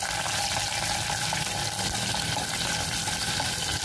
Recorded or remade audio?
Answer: recorded